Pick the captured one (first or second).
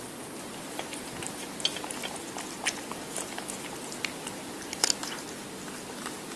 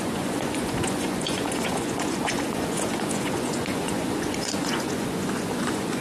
first